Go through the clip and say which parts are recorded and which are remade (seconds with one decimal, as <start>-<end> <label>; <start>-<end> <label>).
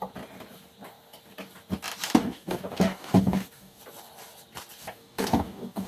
0.0-2.2 recorded; 2.2-3.8 remade; 3.8-4.8 recorded; 4.8-5.9 remade